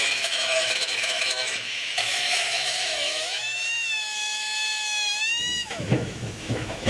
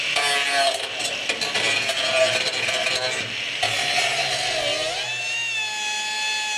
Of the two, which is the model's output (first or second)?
first